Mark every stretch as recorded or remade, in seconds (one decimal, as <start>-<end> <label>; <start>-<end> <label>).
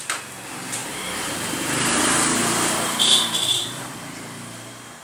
0.0-0.8 recorded; 0.8-3.8 remade; 3.8-5.0 recorded